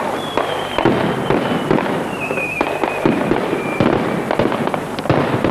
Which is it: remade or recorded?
recorded